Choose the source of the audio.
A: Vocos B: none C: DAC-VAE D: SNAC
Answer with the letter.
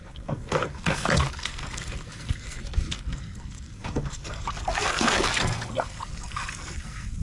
D